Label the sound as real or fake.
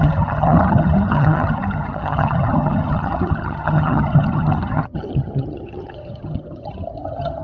fake